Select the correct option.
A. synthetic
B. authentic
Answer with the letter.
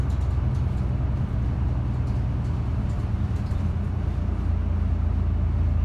B